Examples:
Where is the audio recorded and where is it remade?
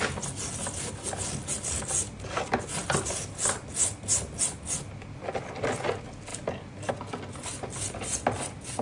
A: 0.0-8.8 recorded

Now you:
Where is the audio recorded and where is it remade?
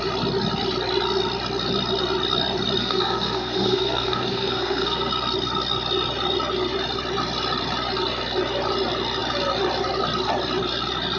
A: 0.0-2.8 recorded; 2.8-5.1 remade; 5.1-11.2 recorded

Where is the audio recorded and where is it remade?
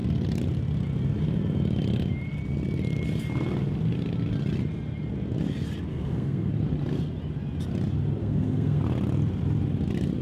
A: 0.0-5.9 recorded; 5.9-6.5 remade; 6.5-8.2 recorded; 8.2-8.8 remade; 8.8-10.2 recorded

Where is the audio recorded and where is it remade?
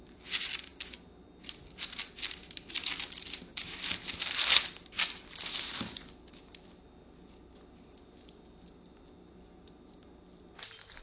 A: 0.0-11.0 recorded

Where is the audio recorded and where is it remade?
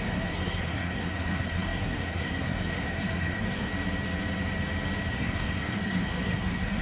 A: 0.0-3.7 remade; 3.7-5.1 recorded; 5.1-6.8 remade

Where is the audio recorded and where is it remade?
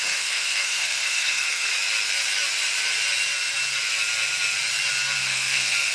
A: 0.0-1.7 remade; 1.7-5.2 recorded; 5.2-5.9 remade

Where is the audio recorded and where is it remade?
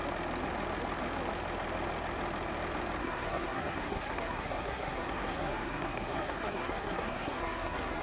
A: 0.0-3.0 recorded; 3.0-8.0 remade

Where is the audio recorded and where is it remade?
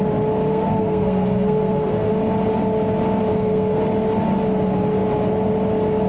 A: 0.0-0.5 recorded; 0.5-2.1 remade; 2.1-3.3 recorded; 3.3-3.8 remade; 3.8-6.1 recorded